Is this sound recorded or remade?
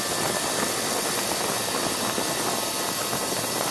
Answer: recorded